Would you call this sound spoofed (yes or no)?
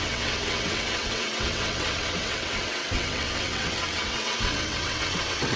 yes